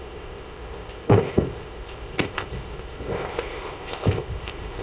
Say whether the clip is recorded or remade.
remade